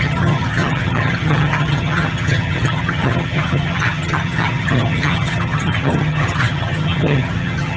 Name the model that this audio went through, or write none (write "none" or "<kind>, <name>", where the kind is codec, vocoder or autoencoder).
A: vocoder, HiFi-GAN